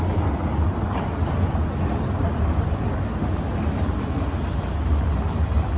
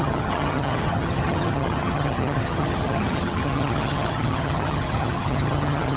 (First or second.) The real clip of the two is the first